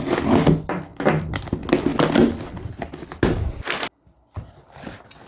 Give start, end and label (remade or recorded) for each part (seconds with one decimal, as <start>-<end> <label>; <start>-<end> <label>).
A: 0.0-5.3 recorded